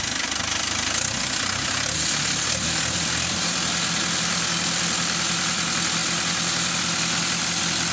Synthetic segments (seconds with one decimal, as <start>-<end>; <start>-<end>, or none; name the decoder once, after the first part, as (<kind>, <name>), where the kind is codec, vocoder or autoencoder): none